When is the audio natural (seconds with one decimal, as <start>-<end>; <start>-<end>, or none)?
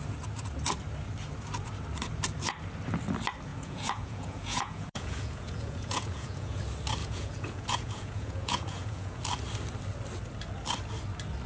0.0-3.5; 6.6-7.0; 9.2-11.5